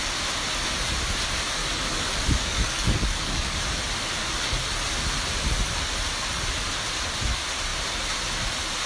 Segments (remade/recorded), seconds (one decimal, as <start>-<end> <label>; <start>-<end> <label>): 0.0-1.6 recorded; 1.6-3.6 remade; 3.6-8.9 recorded